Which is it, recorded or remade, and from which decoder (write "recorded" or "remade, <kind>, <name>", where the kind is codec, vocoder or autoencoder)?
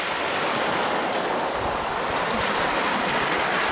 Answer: recorded